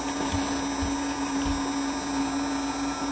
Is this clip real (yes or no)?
yes